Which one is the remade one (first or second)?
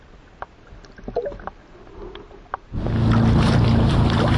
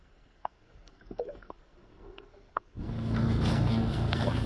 second